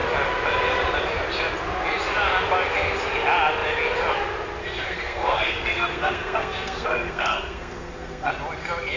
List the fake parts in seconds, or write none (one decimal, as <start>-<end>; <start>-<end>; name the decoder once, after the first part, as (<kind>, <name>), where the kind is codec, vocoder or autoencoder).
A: 4.6-8.3 (codec, SNAC)